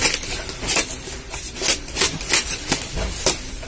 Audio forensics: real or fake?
real